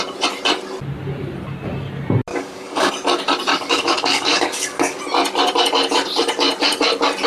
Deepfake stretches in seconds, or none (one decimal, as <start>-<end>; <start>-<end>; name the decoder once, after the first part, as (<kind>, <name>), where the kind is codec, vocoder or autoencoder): 2.3-2.9 (codec, DAC); 3.5-5.0